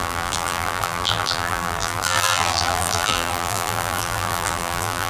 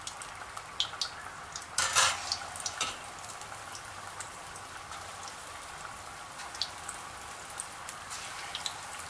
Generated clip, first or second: first